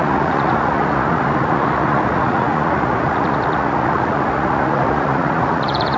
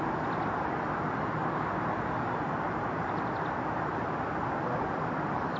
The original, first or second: second